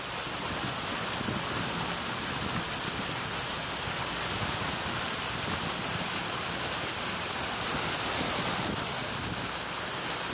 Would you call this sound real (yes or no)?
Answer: yes